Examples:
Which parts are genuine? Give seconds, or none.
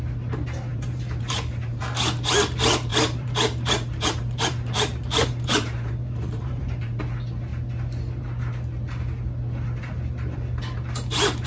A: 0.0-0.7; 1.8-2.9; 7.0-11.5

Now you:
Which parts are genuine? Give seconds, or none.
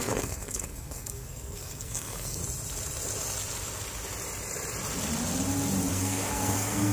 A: 2.4-5.9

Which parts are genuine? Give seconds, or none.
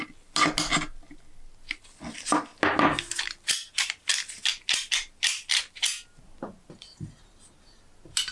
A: 0.0-8.3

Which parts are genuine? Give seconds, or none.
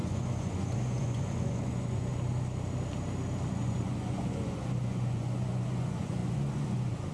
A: 2.1-3.5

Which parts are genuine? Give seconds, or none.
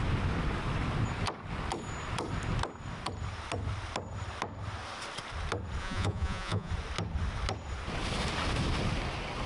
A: 0.0-5.8; 6.7-9.5